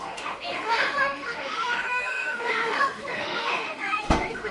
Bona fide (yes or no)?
no